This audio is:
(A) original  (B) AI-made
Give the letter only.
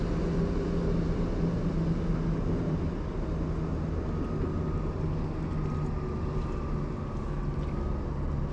A